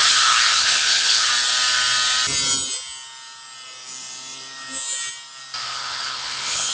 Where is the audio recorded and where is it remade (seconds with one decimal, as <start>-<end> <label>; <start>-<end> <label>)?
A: 0.0-1.3 remade; 1.3-5.6 recorded; 5.6-6.7 remade